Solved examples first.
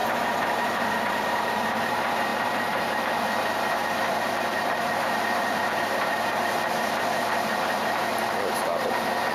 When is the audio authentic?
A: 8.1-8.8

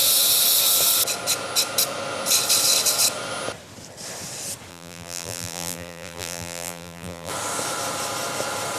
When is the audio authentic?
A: 0.0-4.7; 7.3-8.8

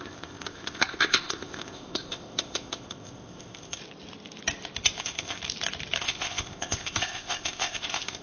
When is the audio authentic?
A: 3.8-5.0; 5.4-6.0

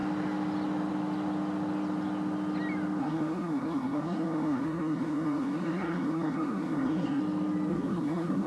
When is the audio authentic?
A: 0.0-3.0; 7.2-7.7

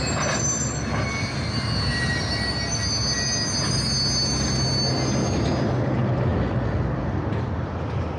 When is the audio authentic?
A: 0.0-8.2

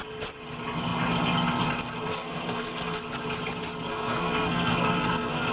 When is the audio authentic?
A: 0.0-2.1; 3.0-3.9